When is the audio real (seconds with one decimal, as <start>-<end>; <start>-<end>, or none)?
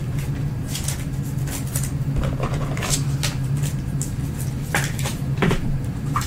0.0-5.1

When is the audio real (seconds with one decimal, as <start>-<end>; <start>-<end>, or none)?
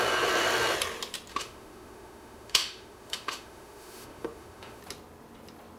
0.0-1.3; 4.8-5.8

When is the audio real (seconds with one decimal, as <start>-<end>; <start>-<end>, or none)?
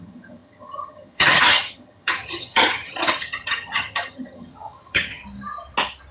5.2-6.1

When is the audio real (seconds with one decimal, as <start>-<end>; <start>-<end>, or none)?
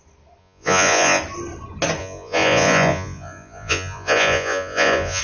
0.0-0.4; 1.2-2.0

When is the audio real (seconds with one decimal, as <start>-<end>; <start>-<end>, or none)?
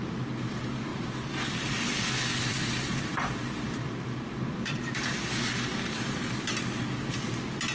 0.0-0.9; 1.6-2.3; 6.9-7.7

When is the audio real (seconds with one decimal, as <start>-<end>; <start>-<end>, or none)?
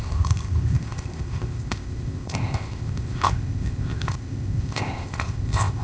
none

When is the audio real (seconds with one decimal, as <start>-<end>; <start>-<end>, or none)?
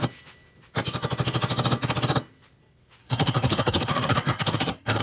0.0-3.0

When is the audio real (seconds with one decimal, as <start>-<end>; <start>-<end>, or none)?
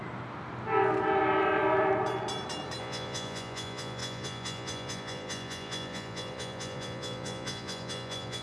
0.0-2.8